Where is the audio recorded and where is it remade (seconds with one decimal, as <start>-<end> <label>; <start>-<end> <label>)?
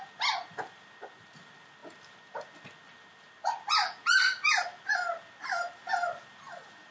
0.0-6.9 recorded